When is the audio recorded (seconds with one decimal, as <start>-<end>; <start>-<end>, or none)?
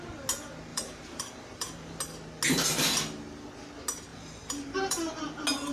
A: 0.0-0.7; 2.0-4.1; 5.2-5.7